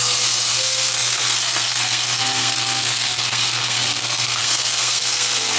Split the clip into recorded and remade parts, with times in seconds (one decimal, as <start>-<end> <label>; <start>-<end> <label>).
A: 0.0-5.6 remade